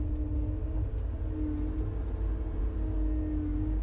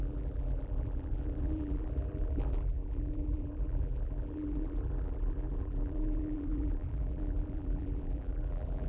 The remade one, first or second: second